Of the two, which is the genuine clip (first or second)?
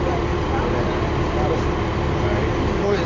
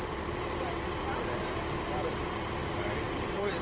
first